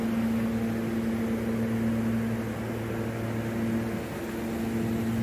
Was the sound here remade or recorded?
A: recorded